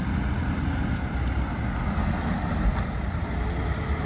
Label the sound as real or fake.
real